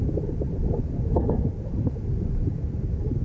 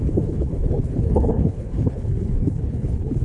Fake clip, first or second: second